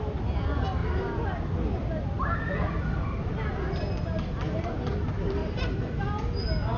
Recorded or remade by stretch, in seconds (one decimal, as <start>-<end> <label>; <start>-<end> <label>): 0.0-5.4 recorded; 5.4-5.9 remade; 5.9-6.8 recorded